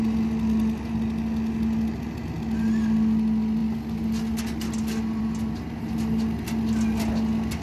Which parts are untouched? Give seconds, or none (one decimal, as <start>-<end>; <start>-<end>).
0.0-7.6